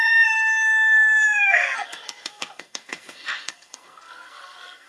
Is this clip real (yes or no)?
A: no